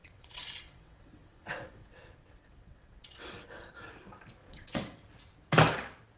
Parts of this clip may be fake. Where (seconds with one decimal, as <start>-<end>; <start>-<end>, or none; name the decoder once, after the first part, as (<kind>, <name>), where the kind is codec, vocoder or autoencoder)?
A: 0.0-3.7 (vocoder, WaveNeXt); 4.4-5.1